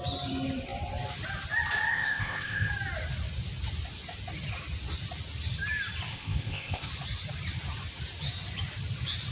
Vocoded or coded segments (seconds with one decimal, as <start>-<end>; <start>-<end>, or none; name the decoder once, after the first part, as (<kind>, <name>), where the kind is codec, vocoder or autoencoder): 1.9-2.7 (codec, ZipCodec); 6.1-6.9